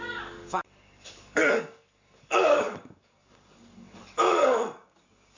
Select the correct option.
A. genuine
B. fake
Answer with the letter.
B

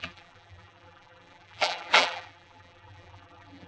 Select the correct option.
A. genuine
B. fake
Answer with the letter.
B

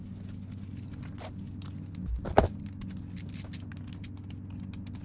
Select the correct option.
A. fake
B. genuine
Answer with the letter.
B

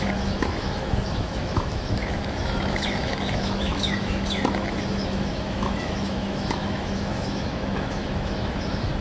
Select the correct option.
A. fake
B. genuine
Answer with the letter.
A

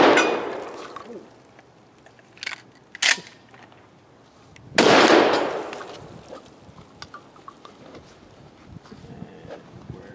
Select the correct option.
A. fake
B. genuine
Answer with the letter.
B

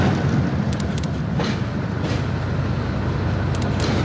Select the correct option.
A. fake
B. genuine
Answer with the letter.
B